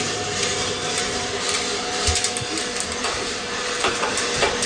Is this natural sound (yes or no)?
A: no